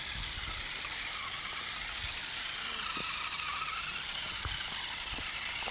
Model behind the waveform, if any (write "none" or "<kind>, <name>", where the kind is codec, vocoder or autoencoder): none